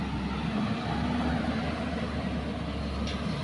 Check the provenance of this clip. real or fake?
real